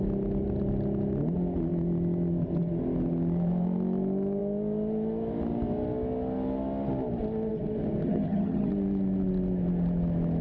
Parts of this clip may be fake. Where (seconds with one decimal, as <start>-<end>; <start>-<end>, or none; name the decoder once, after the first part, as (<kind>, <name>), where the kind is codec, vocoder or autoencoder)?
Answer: 8.0-8.7 (vocoder, HiFi-GAN)